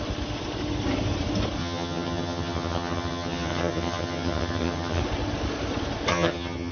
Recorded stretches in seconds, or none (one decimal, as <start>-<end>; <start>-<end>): 0.0-1.6; 5.0-6.1